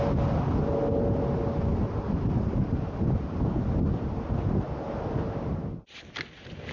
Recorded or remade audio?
recorded